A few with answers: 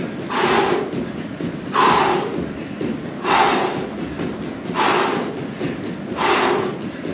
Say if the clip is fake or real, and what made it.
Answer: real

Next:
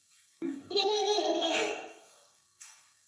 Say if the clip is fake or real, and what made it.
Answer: fake, codec, SNAC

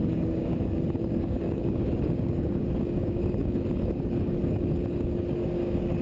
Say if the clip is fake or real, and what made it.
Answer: fake, codec, DAC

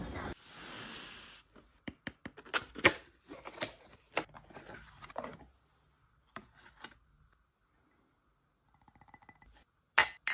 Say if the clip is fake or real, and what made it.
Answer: real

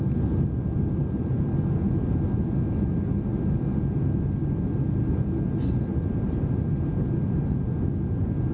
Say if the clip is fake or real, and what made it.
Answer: real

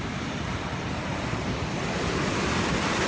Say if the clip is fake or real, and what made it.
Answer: fake, vocoder, BigVGAN v2